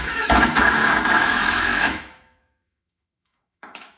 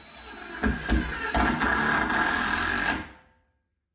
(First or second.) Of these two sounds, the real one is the second